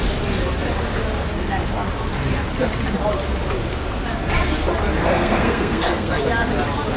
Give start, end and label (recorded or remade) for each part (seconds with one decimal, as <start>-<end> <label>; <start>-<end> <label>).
0.0-5.0 recorded; 5.0-6.2 remade; 6.2-7.0 recorded